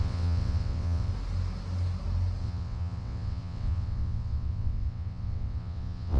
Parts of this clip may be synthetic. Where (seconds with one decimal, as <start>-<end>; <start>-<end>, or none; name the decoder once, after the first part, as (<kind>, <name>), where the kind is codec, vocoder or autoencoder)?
0.0-1.1 (vocoder, WaveNeXt); 2.4-6.2